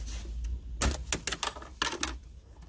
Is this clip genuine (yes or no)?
yes